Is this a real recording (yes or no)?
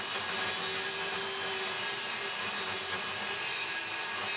yes